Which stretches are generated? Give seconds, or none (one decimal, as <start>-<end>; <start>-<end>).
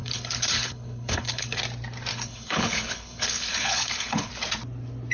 0.0-1.6; 2.1-4.3